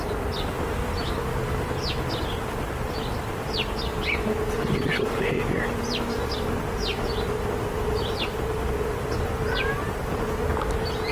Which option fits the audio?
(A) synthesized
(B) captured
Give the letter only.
B